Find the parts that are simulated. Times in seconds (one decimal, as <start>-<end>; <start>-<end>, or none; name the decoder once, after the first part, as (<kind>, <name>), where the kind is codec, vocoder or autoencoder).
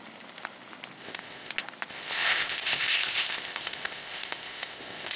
1.0-1.5 (codec, ZipCodec); 1.9-5.2